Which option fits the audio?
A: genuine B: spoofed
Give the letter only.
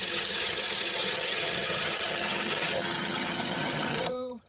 B